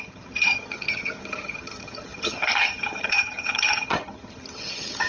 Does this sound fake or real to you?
fake